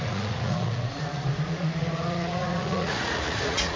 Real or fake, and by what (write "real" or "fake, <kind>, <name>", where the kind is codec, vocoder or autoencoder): fake, vocoder, Vocos